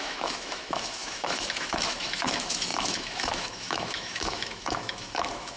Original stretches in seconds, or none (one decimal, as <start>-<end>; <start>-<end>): none